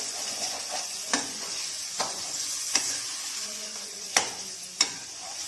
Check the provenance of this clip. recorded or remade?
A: remade